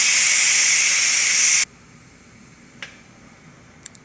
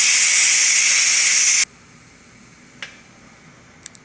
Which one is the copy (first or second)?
first